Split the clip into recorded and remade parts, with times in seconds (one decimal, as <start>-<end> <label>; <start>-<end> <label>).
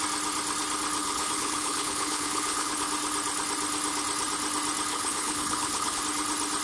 0.0-1.0 recorded; 1.0-2.8 remade; 2.8-4.9 recorded; 4.9-6.0 remade; 6.0-6.6 recorded